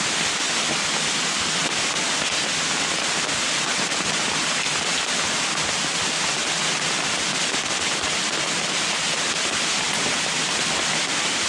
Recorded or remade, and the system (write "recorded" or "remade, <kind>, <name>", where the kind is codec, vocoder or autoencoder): recorded